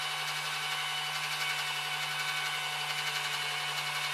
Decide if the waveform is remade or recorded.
recorded